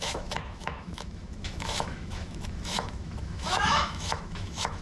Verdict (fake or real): fake